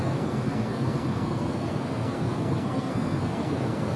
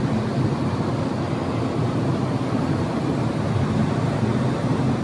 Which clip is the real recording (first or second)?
second